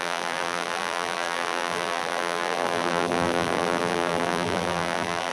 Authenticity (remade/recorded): remade